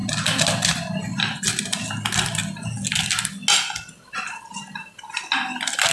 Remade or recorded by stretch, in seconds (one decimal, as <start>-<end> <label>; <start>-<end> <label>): 0.0-5.9 recorded

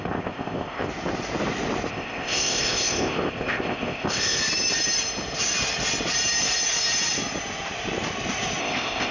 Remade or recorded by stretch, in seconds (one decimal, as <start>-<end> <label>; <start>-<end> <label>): 0.0-0.9 remade; 0.9-1.9 recorded; 1.9-4.4 remade; 4.4-8.6 recorded; 8.6-9.1 remade

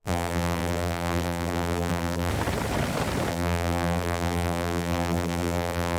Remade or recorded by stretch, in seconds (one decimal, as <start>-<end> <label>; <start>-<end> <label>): 0.0-2.3 remade; 2.3-3.3 recorded; 3.3-6.0 remade

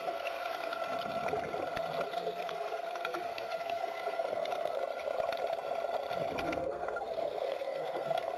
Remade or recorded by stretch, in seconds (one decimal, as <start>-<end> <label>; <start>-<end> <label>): 0.0-0.8 remade; 0.8-2.1 recorded; 2.1-4.8 remade; 4.8-6.4 recorded; 6.4-8.4 remade

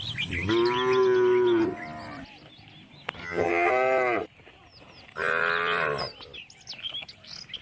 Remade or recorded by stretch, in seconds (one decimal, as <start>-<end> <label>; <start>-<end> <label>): 0.0-3.2 recorded; 3.2-3.7 remade; 3.7-7.6 recorded

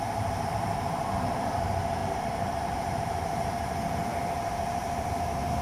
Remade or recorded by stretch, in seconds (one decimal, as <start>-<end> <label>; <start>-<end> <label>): 0.0-5.6 remade

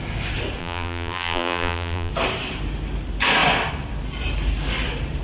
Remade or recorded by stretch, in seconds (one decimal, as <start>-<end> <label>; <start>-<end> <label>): 0.0-0.6 recorded; 0.6-2.1 remade; 2.1-5.2 recorded